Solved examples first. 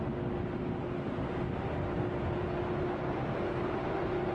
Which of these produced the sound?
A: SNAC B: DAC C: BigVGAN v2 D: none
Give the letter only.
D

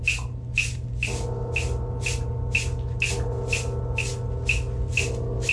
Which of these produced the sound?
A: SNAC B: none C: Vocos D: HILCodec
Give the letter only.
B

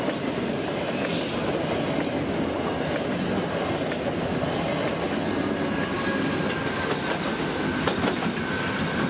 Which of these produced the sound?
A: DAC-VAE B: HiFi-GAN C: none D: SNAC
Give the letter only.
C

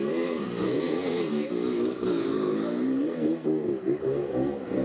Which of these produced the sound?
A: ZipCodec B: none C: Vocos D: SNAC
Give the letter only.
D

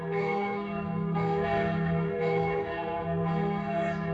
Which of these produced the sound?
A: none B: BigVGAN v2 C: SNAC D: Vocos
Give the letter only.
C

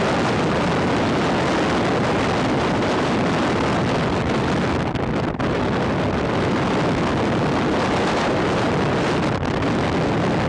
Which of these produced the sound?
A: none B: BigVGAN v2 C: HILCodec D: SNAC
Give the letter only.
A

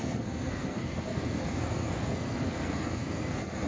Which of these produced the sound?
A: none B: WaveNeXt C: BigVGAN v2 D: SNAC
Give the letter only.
D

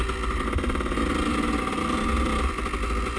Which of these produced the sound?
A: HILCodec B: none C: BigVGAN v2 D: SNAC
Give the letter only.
B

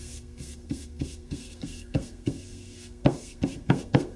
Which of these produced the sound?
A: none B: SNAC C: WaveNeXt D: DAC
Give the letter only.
B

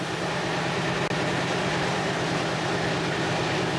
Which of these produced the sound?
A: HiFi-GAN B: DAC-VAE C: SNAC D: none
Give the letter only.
D